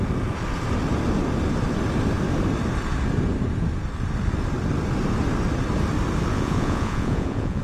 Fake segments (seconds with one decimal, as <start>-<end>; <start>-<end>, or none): 6.3-7.6